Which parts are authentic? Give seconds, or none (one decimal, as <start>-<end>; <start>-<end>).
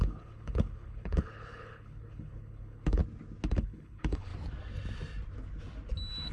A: 3.0-3.5; 4.3-6.3